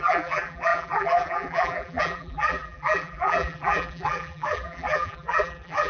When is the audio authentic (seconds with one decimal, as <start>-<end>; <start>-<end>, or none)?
none